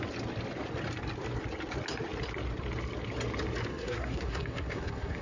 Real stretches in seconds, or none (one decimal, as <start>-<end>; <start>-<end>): 0.0-3.7